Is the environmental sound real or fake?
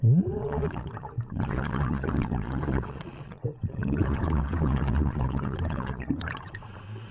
fake